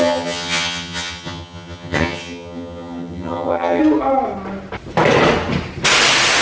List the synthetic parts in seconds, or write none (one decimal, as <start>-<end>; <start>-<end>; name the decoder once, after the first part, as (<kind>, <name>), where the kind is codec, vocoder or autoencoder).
0.0-3.8 (vocoder, HiFi-GAN)